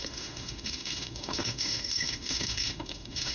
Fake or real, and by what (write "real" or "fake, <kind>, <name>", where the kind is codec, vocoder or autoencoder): fake, autoencoder, DAC-VAE